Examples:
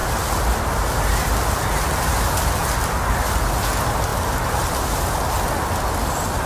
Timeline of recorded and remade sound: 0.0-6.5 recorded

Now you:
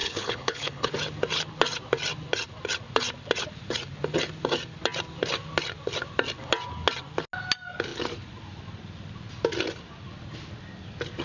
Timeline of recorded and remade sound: 0.0-0.9 remade; 0.9-11.2 recorded